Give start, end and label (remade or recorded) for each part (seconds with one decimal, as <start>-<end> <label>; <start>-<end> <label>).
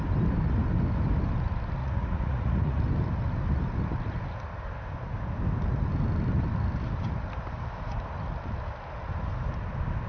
0.0-1.8 recorded; 1.8-2.8 remade; 2.8-10.1 recorded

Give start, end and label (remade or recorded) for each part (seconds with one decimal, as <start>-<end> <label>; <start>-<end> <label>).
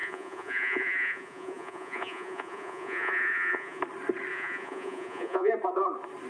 0.0-3.8 remade; 3.8-4.3 recorded; 4.3-5.5 remade; 5.5-6.3 recorded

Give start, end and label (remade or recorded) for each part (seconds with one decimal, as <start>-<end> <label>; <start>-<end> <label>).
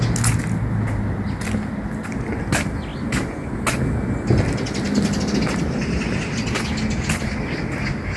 0.0-8.2 recorded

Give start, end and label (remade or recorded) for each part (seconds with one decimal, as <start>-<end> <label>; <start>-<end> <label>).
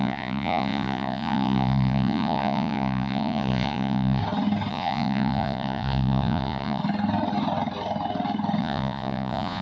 0.0-4.2 remade; 4.2-4.7 recorded; 4.7-6.8 remade; 6.8-8.6 recorded; 8.6-9.6 remade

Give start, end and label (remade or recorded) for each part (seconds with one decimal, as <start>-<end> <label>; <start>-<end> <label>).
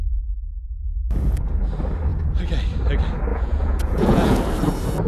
0.0-3.3 recorded; 3.3-4.4 remade; 4.4-5.1 recorded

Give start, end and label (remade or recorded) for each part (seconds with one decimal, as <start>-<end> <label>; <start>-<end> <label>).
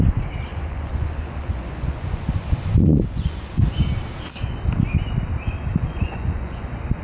0.0-0.5 recorded; 0.5-3.8 remade; 3.8-5.7 recorded; 5.7-7.0 remade